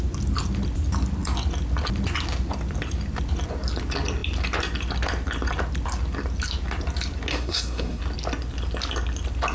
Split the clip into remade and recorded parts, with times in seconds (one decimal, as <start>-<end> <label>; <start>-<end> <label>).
0.0-7.3 recorded; 7.3-8.0 remade; 8.0-9.5 recorded